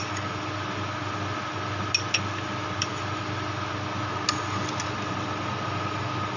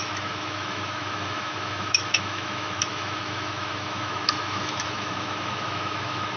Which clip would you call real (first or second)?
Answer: first